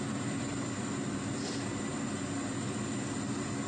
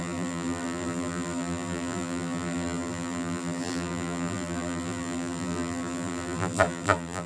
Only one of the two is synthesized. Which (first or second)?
second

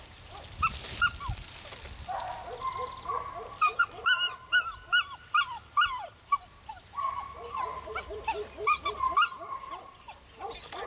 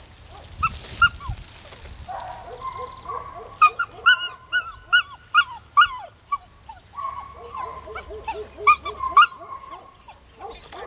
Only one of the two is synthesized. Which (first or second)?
first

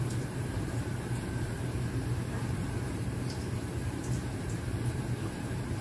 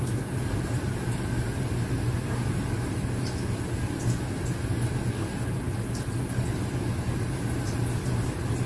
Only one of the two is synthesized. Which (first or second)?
first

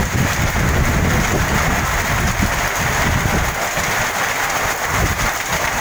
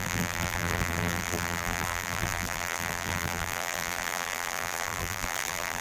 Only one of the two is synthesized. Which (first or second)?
second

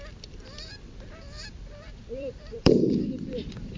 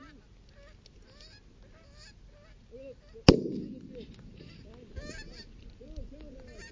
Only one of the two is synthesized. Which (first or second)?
first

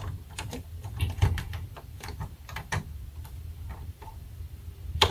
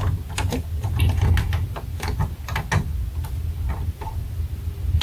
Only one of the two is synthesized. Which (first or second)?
first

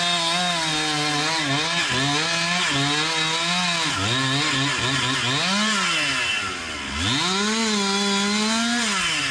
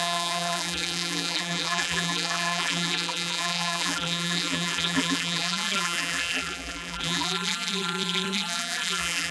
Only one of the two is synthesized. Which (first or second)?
second